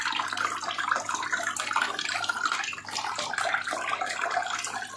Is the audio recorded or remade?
recorded